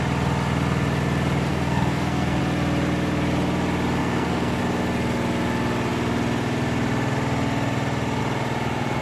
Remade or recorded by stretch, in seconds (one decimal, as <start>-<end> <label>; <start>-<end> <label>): 0.0-1.5 recorded; 1.5-2.4 remade; 2.4-4.0 recorded; 4.0-4.6 remade; 4.6-9.0 recorded